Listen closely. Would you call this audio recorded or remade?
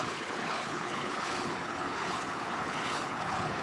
remade